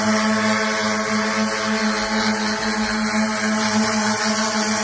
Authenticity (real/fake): real